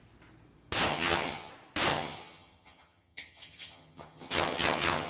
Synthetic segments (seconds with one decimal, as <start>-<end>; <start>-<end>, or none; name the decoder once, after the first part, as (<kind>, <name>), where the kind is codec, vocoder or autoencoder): 0.9-1.5 (vocoder, HiFi-GAN); 1.9-5.1